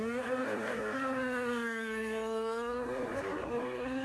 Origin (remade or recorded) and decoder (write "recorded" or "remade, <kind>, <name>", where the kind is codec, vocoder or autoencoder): remade, codec, SNAC